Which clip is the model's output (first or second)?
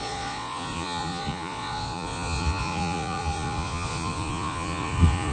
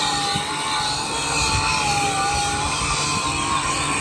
first